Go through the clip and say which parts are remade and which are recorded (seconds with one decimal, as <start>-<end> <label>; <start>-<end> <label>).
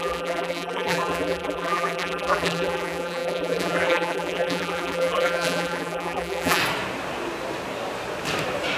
0.0-6.6 remade; 6.6-8.8 recorded